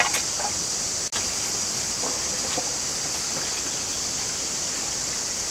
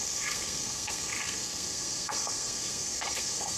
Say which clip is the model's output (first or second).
second